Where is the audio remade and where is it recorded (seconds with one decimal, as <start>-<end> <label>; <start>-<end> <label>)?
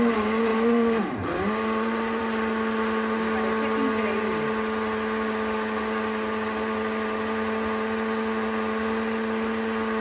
0.0-0.5 recorded; 0.5-2.2 remade; 2.2-10.0 recorded